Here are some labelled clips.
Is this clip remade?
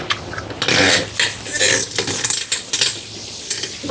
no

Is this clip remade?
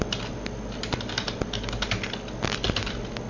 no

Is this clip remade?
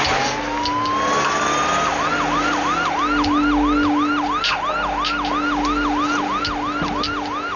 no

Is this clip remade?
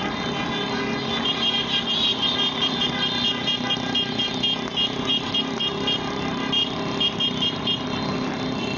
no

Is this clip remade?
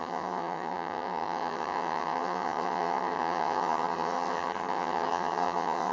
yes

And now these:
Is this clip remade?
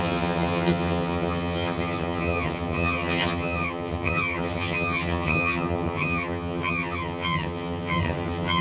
yes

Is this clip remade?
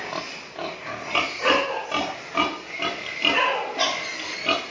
no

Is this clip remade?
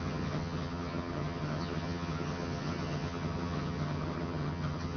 yes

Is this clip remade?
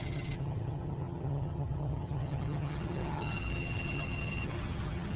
yes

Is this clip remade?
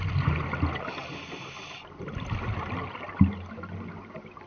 no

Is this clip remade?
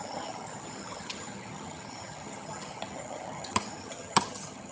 yes